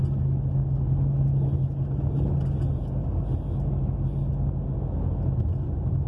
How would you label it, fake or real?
real